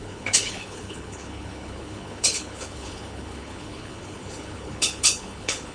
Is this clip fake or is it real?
fake